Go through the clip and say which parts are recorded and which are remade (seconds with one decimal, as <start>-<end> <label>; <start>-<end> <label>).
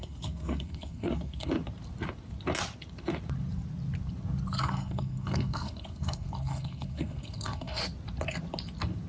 0.0-1.5 remade; 1.5-4.6 recorded; 4.6-7.8 remade; 7.8-9.1 recorded